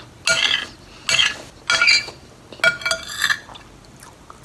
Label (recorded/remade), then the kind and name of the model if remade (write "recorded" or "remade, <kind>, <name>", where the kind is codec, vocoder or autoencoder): recorded